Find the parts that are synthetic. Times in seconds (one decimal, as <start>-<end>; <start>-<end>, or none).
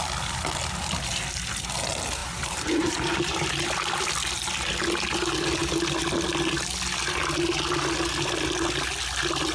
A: 2.2-3.5